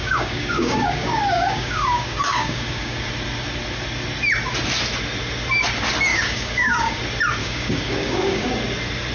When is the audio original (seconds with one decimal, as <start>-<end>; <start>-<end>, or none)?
3.1-6.1; 7.0-7.4; 8.5-9.1